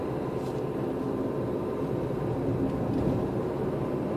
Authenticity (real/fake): fake